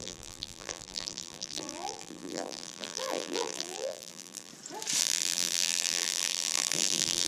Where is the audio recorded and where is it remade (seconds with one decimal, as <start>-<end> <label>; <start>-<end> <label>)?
0.0-4.5 remade; 4.5-5.0 recorded; 5.0-7.3 remade